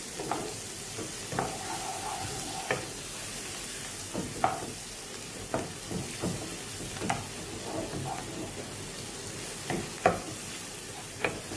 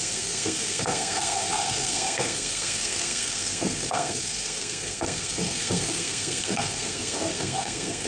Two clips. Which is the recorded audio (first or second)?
first